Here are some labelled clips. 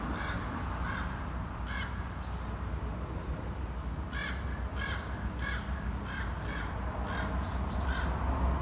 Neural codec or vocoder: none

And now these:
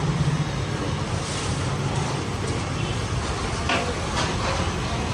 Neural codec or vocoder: none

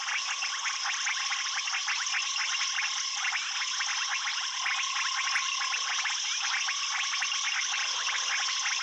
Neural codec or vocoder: none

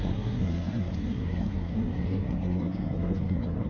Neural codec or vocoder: codec, SNAC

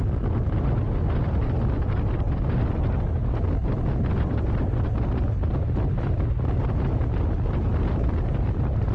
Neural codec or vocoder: none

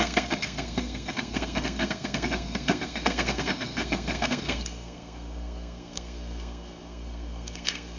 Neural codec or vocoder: codec, SNAC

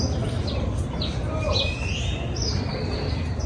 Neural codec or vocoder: none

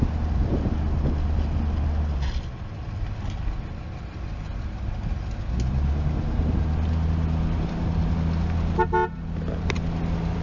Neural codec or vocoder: none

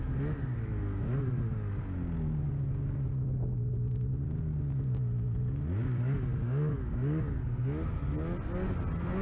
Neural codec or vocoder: none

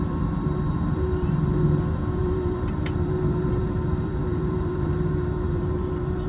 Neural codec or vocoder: vocoder, BigVGAN v2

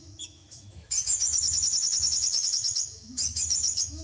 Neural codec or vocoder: autoencoder, DAC-VAE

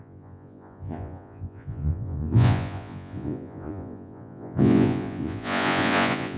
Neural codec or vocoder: vocoder, Vocos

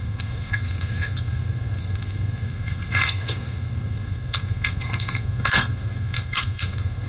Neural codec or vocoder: codec, SNAC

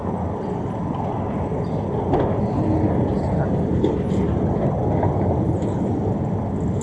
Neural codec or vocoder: none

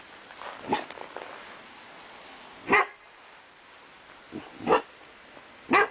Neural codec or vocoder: none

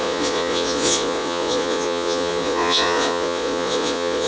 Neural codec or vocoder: vocoder, Vocos